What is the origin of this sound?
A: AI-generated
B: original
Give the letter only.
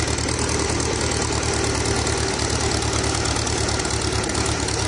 B